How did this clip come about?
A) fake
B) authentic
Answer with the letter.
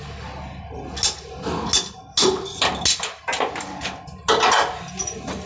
B